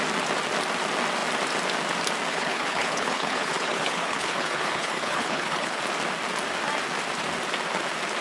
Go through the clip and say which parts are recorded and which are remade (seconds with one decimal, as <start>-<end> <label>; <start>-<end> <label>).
0.0-2.3 recorded; 2.3-5.8 remade; 5.8-8.2 recorded